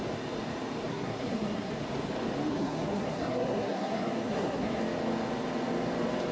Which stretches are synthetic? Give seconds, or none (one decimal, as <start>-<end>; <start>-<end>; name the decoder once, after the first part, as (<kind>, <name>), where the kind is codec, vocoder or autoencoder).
0.9-1.7 (codec, SNAC); 2.5-4.8